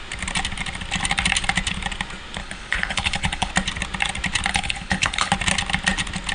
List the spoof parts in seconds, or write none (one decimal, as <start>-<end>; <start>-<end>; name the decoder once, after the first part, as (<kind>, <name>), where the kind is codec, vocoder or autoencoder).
2.4-3.5 (codec, HILCodec); 4.5-5.3